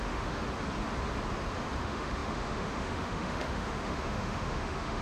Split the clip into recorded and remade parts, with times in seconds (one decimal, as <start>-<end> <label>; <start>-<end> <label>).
0.0-0.4 remade; 0.4-1.8 recorded; 1.8-5.0 remade